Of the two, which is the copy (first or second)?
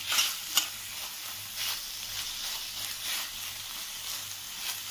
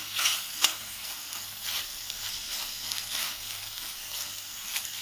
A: second